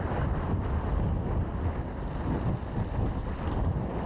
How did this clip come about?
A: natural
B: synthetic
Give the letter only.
A